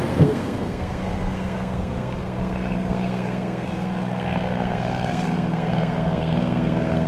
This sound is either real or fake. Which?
fake